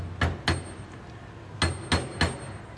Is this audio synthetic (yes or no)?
no